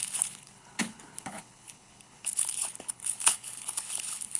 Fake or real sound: fake